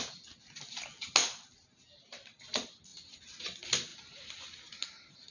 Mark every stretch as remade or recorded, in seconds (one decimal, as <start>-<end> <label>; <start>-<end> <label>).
0.0-5.3 recorded